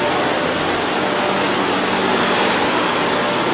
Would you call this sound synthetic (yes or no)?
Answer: no